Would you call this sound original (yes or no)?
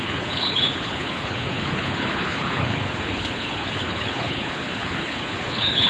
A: no